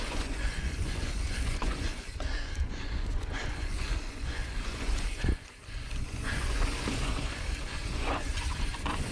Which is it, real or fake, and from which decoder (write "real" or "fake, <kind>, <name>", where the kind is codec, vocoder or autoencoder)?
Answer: fake, vocoder, Vocos